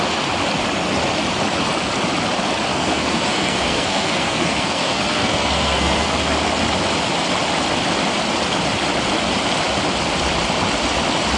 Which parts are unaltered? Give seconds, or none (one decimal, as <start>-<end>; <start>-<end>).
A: 0.0-2.7; 6.2-11.4